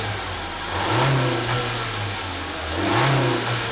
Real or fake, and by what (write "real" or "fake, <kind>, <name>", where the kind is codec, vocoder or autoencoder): real